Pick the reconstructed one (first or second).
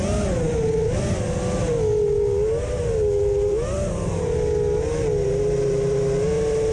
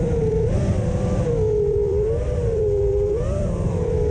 second